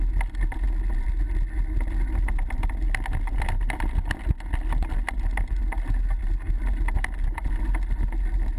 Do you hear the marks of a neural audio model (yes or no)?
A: no